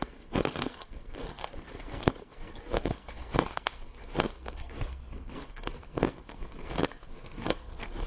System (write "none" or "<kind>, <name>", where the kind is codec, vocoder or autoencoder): codec, SNAC